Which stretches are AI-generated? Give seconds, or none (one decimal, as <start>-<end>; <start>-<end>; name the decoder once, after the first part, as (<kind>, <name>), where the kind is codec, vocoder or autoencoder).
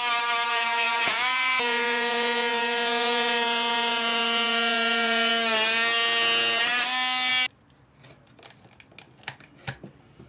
0.5-5.3 (vocoder, Vocos)